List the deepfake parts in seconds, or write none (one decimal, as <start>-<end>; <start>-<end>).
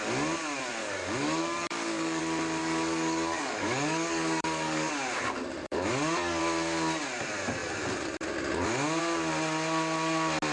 0.8-2.2; 2.6-4.9; 5.6-6.4